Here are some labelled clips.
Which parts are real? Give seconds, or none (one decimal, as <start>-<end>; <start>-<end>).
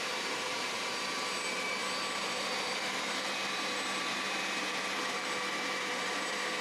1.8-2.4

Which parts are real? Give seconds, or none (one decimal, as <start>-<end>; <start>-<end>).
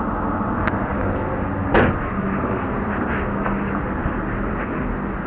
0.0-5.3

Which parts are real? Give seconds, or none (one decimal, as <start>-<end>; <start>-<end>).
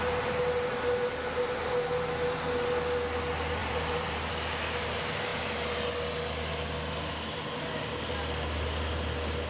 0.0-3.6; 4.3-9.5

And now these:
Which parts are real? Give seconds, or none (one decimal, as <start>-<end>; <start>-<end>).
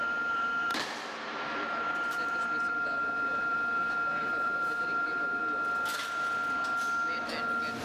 5.4-7.8